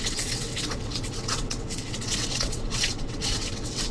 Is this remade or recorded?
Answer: remade